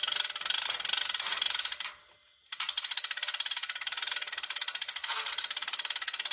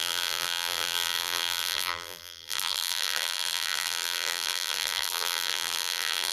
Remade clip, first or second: second